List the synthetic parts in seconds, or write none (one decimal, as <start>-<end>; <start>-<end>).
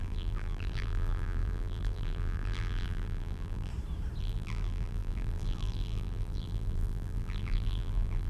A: 0.0-3.7; 4.2-8.3